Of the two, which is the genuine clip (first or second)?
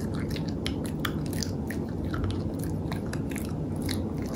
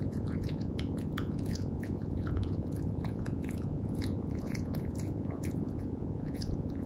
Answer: first